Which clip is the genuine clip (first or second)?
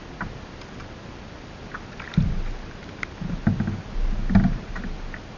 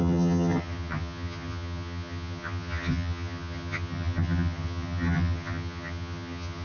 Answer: first